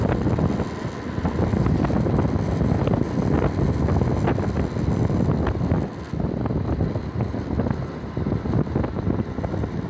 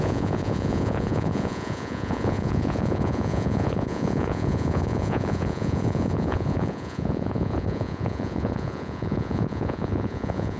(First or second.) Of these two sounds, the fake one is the second